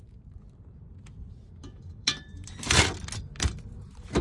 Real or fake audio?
fake